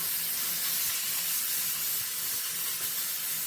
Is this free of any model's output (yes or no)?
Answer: yes